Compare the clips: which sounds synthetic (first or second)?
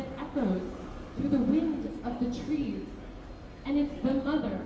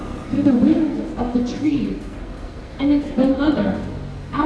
second